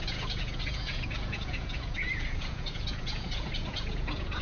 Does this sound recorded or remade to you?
remade